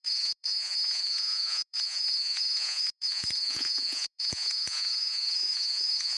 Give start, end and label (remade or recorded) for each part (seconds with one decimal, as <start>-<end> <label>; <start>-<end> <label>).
0.0-6.2 remade